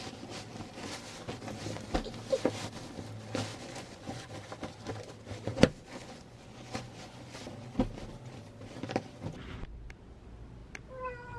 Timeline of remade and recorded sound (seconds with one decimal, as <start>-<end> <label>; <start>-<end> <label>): 0.0-3.5 recorded; 3.5-4.3 remade; 4.3-5.5 recorded; 5.5-7.4 remade; 7.4-11.4 recorded